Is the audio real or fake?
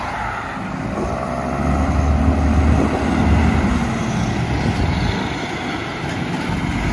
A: real